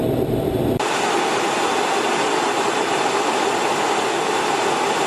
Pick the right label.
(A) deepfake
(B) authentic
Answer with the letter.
B